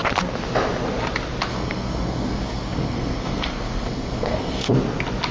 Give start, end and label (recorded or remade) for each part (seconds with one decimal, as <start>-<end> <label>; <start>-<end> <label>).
0.0-1.5 recorded; 1.5-4.7 remade; 4.7-5.3 recorded